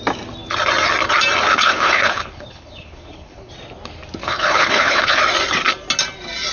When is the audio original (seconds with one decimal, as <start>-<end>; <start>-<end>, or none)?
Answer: 0.0-1.5; 3.5-4.2; 5.2-6.5